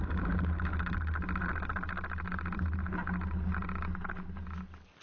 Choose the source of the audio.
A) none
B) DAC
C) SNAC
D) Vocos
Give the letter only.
A